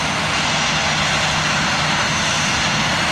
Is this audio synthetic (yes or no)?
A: no